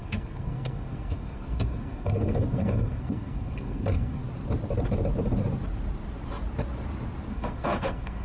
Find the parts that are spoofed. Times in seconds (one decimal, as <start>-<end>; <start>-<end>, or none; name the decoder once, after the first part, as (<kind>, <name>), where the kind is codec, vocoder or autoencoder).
0.0-4.2 (codec, SNAC); 7.3-8.2